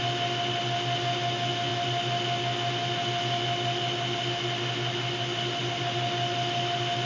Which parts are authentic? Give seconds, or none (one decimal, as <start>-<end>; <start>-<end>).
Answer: 0.0-7.1